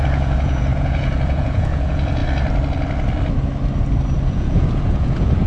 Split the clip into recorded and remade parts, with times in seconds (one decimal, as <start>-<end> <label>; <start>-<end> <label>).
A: 0.0-2.2 remade; 2.2-4.3 recorded; 4.3-5.5 remade